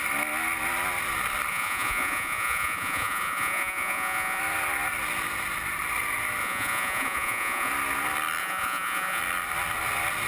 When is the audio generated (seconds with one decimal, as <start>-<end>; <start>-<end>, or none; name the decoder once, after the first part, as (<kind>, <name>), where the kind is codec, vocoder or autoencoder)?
1.5-4.4 (vocoder, Vocos); 6.4-7.7; 8.4-9.2

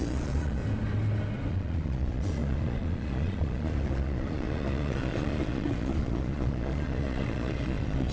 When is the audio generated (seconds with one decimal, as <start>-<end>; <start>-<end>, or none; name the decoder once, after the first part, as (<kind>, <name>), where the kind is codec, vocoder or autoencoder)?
0.0-0.6 (vocoder, Vocos); 1.5-8.1

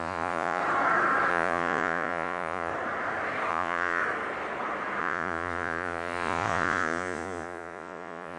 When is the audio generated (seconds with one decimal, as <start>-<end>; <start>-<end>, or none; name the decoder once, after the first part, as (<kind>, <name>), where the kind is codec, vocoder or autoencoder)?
0.0-0.6 (vocoder, Vocos); 1.3-2.7; 3.5-4.0; 5.0-8.4

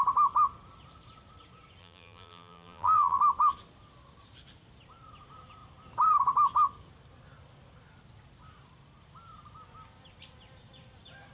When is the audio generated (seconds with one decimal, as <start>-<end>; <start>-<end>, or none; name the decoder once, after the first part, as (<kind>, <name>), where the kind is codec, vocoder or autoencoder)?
1.8-3.2 (vocoder, BigVGAN v2)

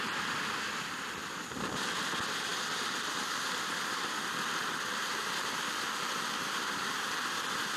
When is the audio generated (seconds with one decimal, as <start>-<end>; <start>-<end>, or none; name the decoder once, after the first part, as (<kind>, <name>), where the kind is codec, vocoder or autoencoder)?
0.0-7.8 (vocoder, BigVGAN v2)

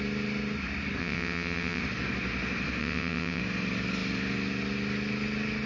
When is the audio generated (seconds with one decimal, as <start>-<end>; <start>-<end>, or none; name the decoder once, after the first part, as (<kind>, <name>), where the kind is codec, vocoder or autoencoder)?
1.0-1.8 (vocoder, WaveNeXt); 2.8-3.4

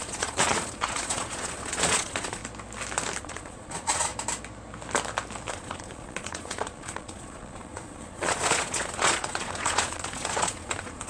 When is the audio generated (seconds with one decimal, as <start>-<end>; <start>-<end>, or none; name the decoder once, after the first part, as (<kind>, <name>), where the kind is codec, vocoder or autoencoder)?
0.0-2.4 (vocoder, Vocos); 3.2-4.1; 5.5-11.1

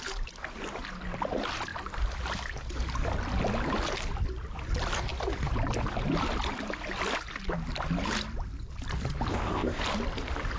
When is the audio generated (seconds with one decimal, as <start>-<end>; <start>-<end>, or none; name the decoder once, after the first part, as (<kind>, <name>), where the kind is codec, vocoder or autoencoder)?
9.3-9.8 (codec, ZipCodec)